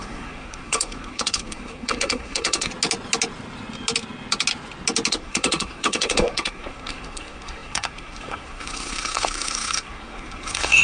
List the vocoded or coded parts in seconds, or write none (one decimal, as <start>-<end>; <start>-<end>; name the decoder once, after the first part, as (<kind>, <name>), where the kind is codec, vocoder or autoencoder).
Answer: 0.0-2.7 (codec, SNAC); 5.1-10.8